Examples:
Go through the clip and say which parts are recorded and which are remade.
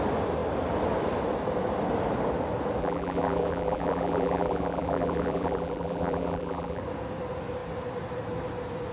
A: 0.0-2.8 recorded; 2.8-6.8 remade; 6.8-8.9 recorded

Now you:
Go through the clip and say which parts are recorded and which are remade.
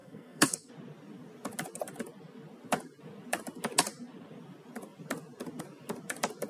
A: 0.0-0.7 remade; 0.7-6.5 recorded